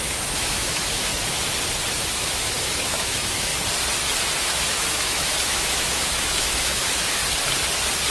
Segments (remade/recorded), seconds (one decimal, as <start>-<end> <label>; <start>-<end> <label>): 0.0-1.1 remade; 1.1-2.1 recorded; 2.1-3.5 remade; 3.5-4.4 recorded; 4.4-7.2 remade; 7.2-8.1 recorded